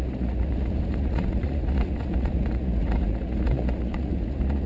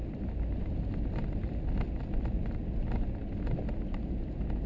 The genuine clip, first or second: second